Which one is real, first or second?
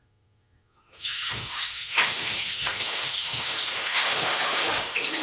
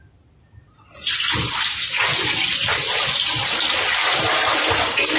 second